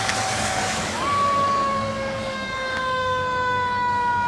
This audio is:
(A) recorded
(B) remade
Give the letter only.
B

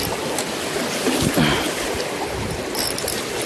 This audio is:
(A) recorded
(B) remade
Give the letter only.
A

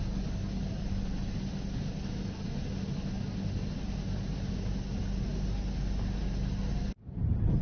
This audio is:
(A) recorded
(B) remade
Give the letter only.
A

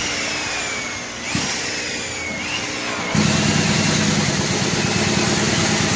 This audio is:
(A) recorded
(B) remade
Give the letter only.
A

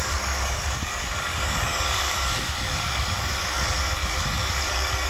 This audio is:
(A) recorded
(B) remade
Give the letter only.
B